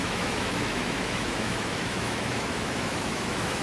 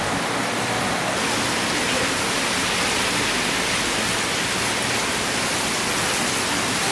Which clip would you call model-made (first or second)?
first